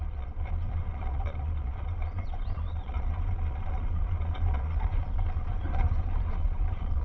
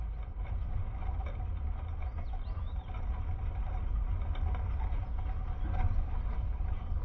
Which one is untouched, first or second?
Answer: second